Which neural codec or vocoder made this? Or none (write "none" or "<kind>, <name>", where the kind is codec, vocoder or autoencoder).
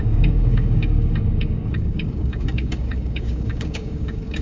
codec, DAC